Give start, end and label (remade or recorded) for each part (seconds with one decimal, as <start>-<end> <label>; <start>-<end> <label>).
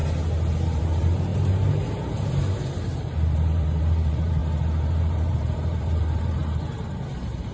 0.0-0.6 recorded; 0.6-1.3 remade; 1.3-2.3 recorded; 2.3-4.4 remade; 4.4-4.9 recorded; 4.9-6.4 remade; 6.4-7.1 recorded; 7.1-7.5 remade